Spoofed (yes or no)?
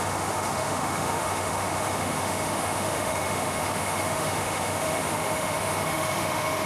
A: yes